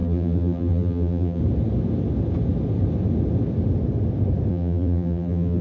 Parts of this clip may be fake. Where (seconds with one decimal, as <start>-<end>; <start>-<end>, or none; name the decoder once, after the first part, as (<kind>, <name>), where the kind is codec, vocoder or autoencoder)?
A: 0.0-1.4 (vocoder, BigVGAN v2); 4.5-5.6